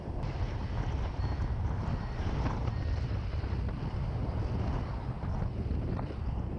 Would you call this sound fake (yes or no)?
no